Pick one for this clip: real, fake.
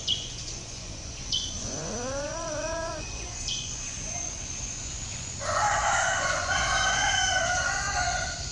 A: fake